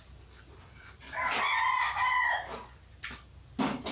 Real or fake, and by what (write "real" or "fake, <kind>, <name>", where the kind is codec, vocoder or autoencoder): real